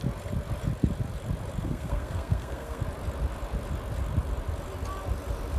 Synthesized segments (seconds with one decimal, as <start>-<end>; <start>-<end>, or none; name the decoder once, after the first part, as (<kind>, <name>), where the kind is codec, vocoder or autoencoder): 1.6-2.8 (codec, SNAC)